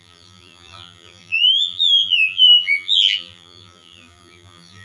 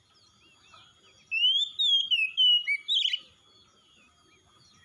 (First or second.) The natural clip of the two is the second